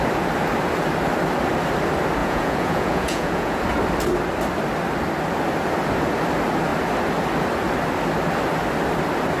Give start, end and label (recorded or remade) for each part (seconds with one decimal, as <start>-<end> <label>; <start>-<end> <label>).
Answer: 0.0-2.2 recorded; 2.2-3.6 remade; 3.6-9.4 recorded